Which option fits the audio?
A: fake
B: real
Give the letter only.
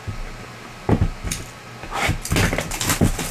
B